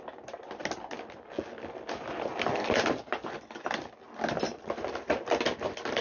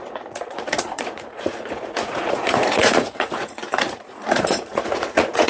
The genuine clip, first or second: first